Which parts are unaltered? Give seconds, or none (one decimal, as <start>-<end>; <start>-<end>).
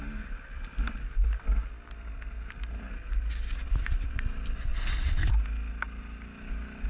0.0-6.9